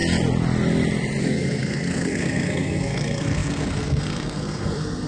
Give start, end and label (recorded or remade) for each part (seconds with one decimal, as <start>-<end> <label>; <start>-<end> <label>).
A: 0.0-1.2 recorded; 1.2-5.1 remade